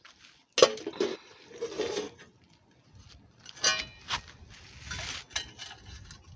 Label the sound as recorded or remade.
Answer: recorded